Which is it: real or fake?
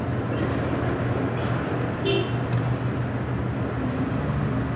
real